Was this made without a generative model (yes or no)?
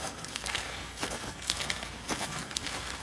no